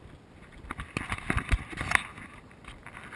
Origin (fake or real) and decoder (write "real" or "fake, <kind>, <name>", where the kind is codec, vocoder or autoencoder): real